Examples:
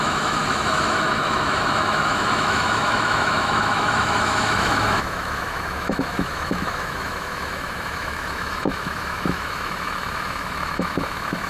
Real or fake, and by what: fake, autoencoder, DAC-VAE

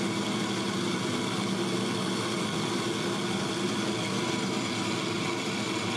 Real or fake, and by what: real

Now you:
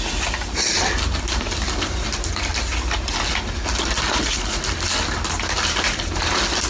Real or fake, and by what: real